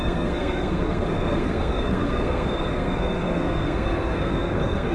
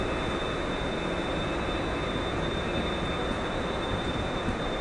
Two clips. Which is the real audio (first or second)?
second